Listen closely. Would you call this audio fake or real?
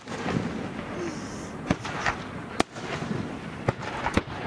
real